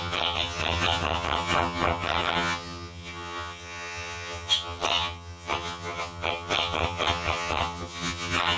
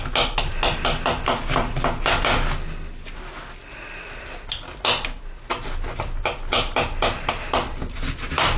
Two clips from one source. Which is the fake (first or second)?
first